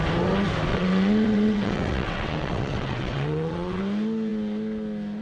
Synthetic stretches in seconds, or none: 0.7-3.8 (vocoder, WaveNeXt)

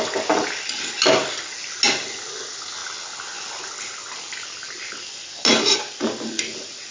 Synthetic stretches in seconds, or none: none

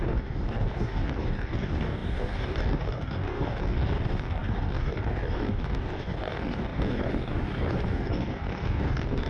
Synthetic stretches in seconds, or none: 0.0-9.3 (codec, DAC)

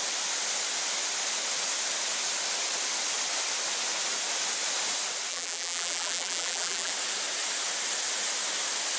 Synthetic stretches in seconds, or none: 5.3-6.9 (vocoder, BigVGAN v2)

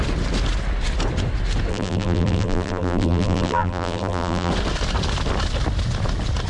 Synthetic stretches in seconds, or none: 1.7-4.5 (vocoder, BigVGAN v2)